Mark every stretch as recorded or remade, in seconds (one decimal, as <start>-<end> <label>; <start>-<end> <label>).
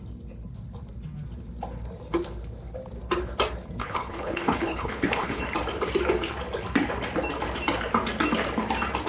0.0-3.8 recorded; 3.8-5.4 remade; 5.4-9.1 recorded